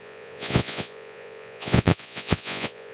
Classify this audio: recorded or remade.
remade